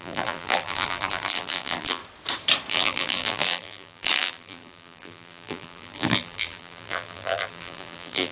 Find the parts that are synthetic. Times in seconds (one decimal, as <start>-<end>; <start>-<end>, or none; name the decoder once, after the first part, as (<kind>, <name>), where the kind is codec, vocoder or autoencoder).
0.0-2.0 (vocoder, BigVGAN v2); 2.7-8.3